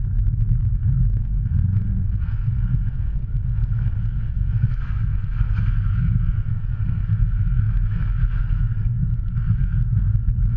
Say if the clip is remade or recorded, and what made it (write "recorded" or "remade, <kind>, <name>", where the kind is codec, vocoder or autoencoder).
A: remade, codec, SNAC